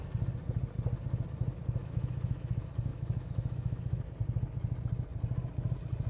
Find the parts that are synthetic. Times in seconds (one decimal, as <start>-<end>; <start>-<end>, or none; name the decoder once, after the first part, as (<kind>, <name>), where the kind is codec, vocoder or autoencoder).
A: 1.8-2.5 (autoencoder, DAC-VAE); 2.9-4.0